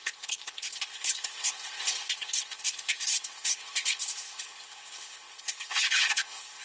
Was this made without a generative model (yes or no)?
no